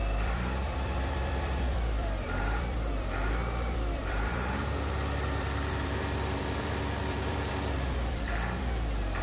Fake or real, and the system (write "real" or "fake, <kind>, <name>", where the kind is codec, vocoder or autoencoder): fake, vocoder, BigVGAN v2